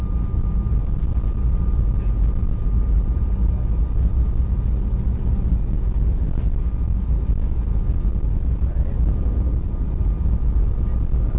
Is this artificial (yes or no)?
no